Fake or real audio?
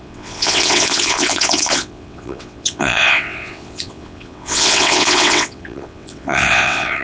fake